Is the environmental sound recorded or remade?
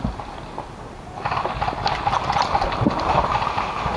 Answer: recorded